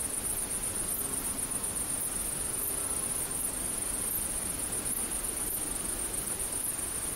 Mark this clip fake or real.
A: real